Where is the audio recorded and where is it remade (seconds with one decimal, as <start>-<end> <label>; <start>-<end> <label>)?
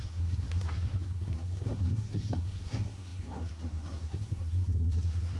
0.0-5.4 remade